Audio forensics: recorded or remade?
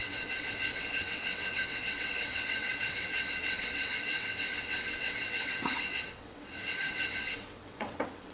remade